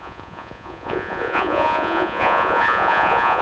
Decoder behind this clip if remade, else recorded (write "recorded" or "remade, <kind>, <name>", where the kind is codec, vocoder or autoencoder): remade, vocoder, Vocos